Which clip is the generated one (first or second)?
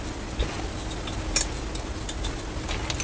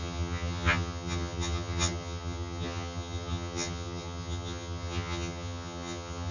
second